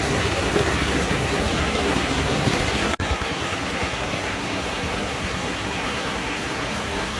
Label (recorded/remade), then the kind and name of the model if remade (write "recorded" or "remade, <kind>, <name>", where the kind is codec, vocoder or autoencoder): remade, codec, SNAC